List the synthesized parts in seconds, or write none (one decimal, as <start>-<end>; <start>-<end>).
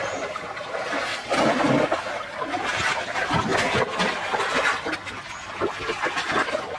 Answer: 0.0-1.1; 2.2-3.5; 6.1-6.8